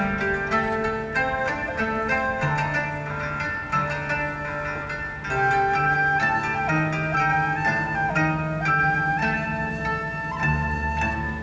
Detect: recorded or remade recorded